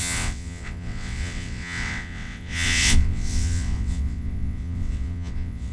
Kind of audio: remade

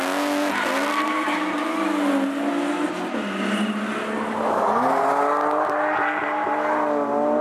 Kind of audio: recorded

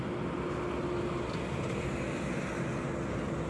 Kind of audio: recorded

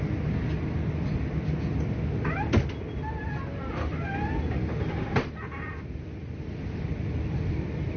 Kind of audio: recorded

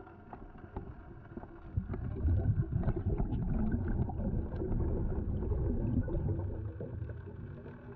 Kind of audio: recorded